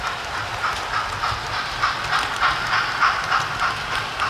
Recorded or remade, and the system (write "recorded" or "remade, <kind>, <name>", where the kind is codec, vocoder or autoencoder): recorded